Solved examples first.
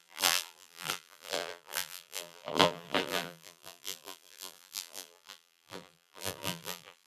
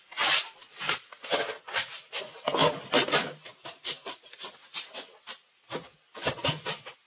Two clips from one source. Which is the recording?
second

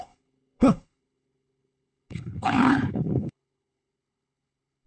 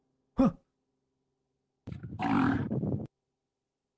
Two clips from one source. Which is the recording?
second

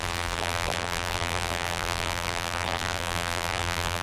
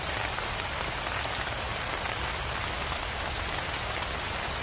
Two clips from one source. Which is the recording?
second